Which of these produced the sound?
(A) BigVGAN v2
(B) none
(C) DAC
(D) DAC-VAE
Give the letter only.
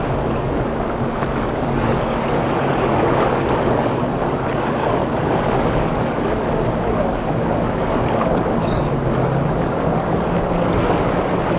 C